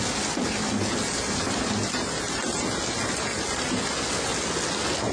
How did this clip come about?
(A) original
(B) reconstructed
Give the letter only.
A